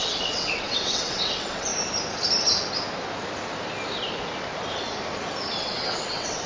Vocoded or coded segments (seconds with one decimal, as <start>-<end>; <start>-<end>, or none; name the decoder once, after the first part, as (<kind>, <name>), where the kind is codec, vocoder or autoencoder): 0.0-1.7 (vocoder, WaveNeXt); 5.6-6.5